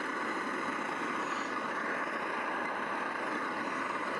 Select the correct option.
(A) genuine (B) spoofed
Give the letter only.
A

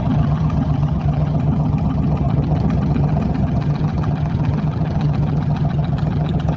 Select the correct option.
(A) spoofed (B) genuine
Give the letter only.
A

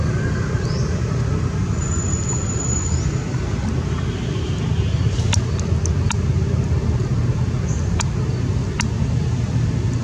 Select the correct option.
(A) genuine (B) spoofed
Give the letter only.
A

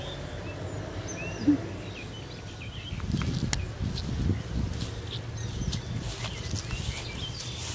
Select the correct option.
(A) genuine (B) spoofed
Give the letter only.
A